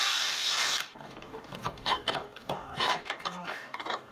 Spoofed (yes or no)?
yes